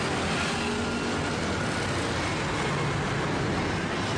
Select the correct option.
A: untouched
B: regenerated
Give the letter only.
A